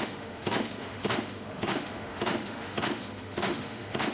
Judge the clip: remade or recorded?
remade